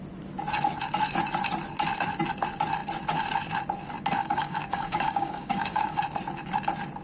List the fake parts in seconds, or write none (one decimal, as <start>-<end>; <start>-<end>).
4.2-6.0